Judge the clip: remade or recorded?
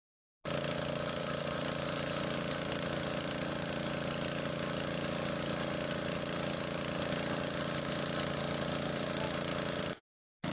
recorded